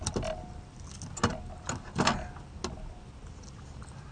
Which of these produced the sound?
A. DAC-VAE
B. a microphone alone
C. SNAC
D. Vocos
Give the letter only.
B